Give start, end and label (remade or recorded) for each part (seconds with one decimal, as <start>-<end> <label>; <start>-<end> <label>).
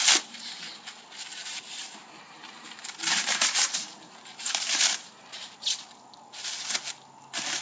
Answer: 0.0-1.4 recorded; 1.4-5.6 remade; 5.6-7.6 recorded